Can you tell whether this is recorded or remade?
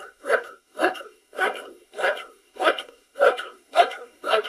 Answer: remade